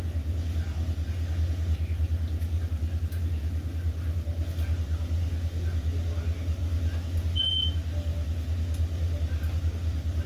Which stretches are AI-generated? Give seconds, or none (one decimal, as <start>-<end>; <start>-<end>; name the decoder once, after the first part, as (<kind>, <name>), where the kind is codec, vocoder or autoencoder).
none